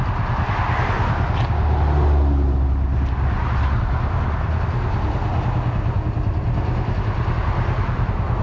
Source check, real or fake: real